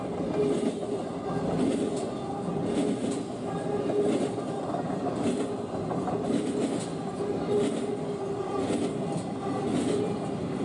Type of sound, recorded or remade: recorded